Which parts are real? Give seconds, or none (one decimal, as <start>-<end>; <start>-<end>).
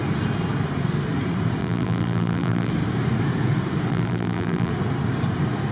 0.0-1.6; 2.7-3.9; 4.7-5.7